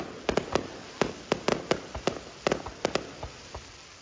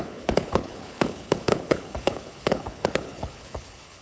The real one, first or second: first